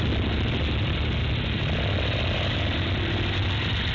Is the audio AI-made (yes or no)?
no